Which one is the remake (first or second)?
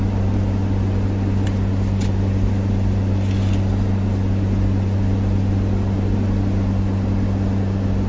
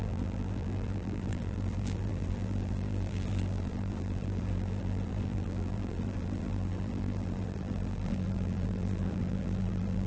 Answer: second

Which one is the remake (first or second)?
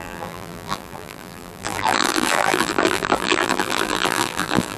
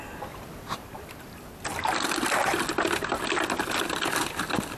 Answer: first